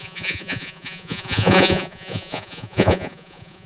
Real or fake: fake